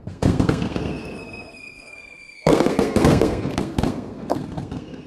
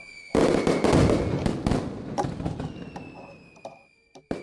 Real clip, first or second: second